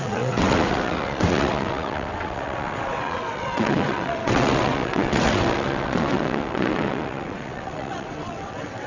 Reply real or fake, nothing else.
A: fake